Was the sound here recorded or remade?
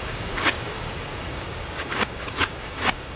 remade